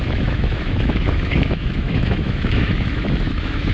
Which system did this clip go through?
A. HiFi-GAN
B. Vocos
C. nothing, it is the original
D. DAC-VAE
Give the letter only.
D